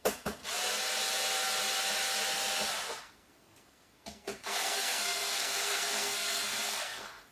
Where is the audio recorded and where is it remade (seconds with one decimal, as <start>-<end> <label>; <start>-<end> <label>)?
0.0-0.4 remade; 0.4-3.0 recorded; 3.0-7.3 remade